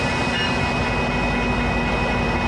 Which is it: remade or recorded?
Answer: recorded